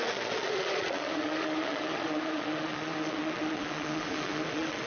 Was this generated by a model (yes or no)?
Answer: yes